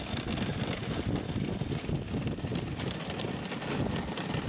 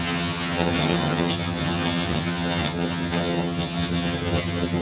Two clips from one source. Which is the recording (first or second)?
first